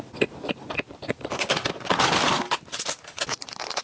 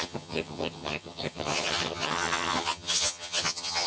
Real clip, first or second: first